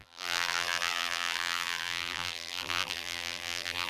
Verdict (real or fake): fake